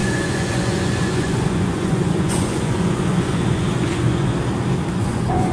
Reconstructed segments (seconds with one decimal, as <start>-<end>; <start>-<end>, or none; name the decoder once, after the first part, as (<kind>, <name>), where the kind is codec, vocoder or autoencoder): 0.0-4.3 (vocoder, Vocos); 5.0-5.5